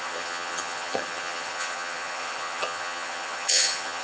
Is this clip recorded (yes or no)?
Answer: no